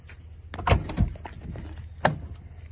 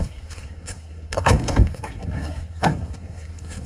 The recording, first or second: first